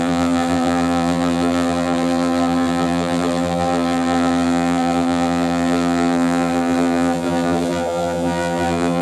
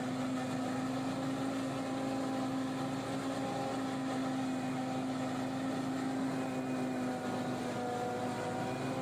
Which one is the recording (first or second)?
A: second